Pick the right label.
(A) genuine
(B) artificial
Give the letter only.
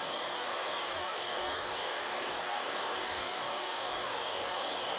B